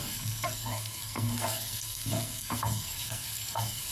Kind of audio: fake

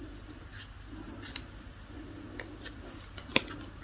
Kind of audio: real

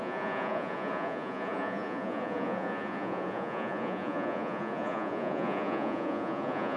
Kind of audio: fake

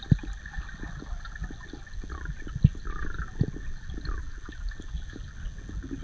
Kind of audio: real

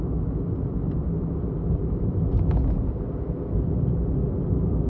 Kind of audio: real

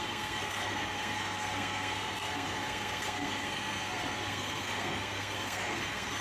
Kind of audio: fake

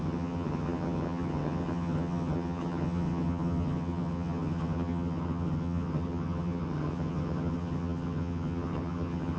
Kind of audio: fake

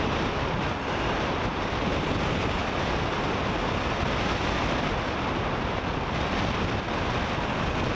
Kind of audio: real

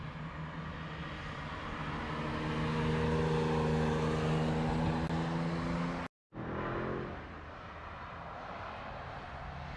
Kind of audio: real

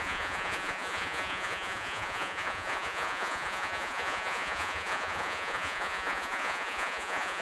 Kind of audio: fake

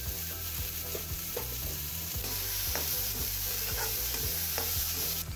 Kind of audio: fake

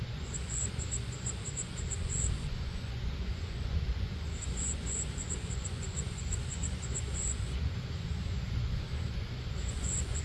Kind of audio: fake